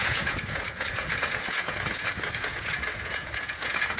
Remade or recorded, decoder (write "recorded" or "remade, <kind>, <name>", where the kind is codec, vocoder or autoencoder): remade, vocoder, Vocos